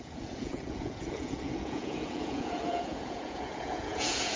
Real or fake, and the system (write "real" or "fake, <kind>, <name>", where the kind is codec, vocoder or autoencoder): fake, vocoder, Vocos